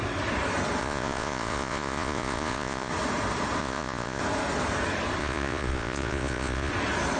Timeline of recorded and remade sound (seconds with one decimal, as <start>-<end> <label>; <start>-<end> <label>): 0.0-0.8 recorded; 0.8-2.9 remade; 2.9-3.6 recorded; 3.6-4.2 remade; 4.2-5.2 recorded; 5.2-6.7 remade; 6.7-7.2 recorded